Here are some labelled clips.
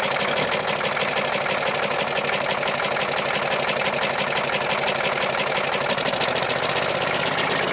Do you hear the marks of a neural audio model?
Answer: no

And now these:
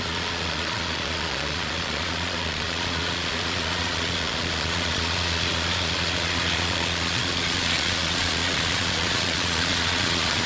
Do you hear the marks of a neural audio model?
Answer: yes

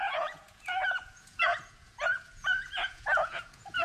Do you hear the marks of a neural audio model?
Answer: yes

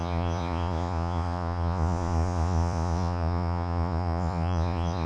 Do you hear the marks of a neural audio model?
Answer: yes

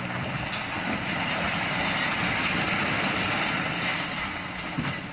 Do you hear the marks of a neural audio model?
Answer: no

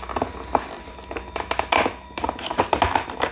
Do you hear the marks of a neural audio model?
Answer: no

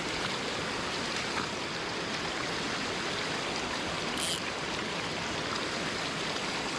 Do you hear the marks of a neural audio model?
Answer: no